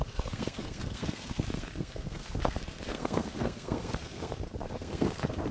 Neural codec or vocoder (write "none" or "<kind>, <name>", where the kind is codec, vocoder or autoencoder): codec, SNAC